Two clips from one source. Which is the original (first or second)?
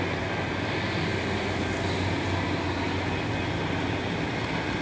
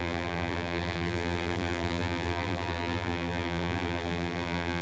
first